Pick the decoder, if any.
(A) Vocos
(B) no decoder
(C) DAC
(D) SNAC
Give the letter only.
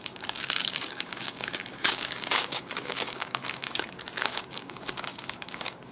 C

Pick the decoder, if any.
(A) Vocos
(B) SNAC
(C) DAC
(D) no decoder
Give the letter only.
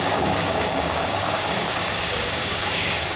C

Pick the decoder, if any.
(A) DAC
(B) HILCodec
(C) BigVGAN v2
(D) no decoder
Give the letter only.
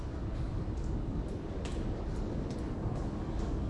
A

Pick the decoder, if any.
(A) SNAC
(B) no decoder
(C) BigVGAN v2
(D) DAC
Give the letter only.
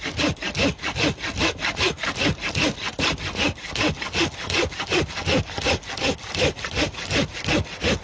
B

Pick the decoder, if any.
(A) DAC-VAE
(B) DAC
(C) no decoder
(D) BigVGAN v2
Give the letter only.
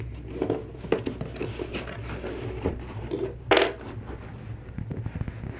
C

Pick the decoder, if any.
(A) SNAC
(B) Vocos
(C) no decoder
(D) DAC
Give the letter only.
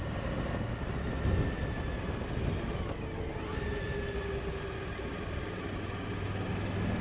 C